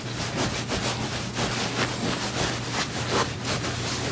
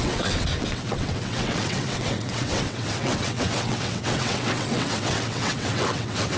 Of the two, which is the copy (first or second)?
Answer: second